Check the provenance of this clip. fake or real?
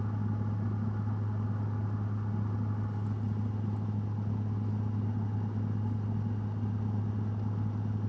real